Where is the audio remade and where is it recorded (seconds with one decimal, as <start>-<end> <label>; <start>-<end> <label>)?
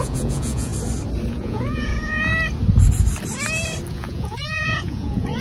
0.0-0.7 remade; 0.7-1.3 recorded; 1.3-2.3 remade; 2.3-3.9 recorded; 3.9-5.4 remade